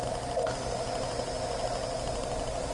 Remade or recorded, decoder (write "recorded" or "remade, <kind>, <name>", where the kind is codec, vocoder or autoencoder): recorded